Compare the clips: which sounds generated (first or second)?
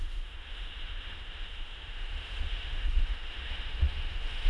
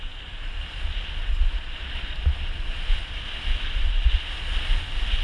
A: first